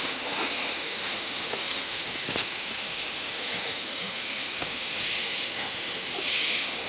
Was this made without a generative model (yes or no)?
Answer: no